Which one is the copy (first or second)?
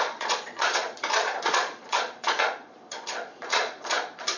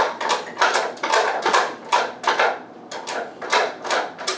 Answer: first